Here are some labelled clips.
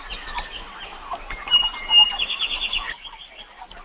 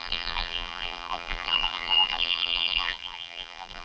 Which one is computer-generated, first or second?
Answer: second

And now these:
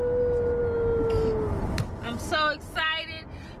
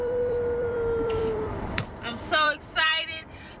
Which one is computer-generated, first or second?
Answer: second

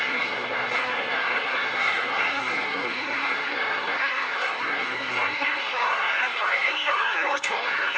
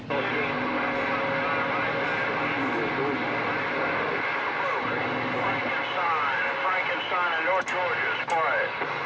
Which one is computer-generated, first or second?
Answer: first